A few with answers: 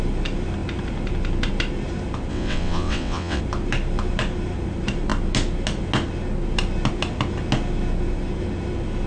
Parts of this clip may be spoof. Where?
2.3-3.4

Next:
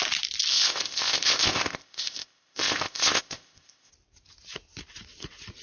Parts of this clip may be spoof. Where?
0.5-3.9

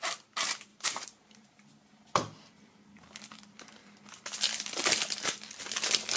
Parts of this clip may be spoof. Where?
0.7-1.7

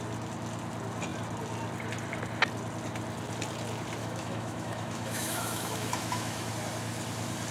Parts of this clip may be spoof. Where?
4.0-6.5

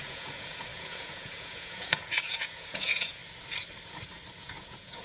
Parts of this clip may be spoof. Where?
0.0-3.2; 4.3-5.0

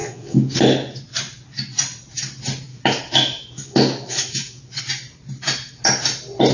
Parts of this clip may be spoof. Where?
0.0-0.6; 2.7-4.8